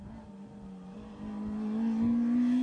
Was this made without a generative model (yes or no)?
yes